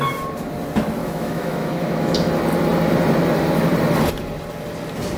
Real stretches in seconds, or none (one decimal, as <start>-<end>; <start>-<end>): 0.0-1.0; 2.3-5.2